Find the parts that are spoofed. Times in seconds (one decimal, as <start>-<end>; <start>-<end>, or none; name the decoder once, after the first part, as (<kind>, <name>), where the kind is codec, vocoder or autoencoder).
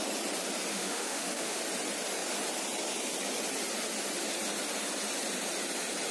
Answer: 0.7-1.6 (autoencoder, DAC-VAE)